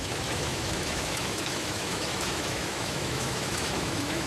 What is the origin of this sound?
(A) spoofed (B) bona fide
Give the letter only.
A